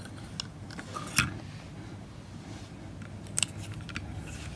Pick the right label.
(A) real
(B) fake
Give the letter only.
A